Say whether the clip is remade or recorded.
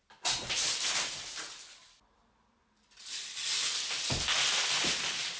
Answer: recorded